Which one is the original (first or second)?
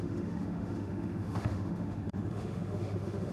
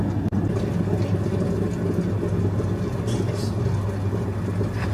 second